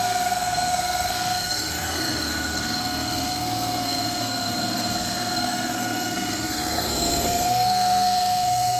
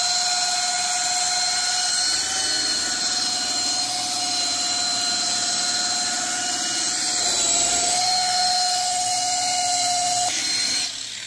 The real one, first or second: second